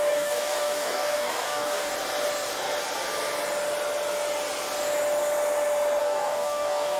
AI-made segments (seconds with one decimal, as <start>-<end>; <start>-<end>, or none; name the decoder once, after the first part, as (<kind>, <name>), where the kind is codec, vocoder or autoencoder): 0.0-1.9 (codec, DAC); 6.0-7.0